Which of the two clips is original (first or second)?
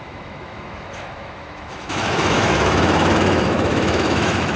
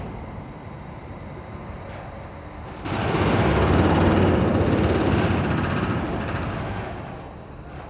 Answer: second